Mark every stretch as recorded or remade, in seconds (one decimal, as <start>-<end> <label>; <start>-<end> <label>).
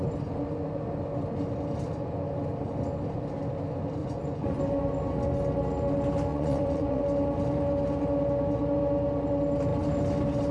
0.0-4.0 recorded; 4.0-4.6 remade; 4.6-6.3 recorded; 6.3-7.0 remade; 7.0-10.5 recorded